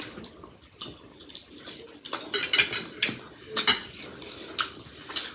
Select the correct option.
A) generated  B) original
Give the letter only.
B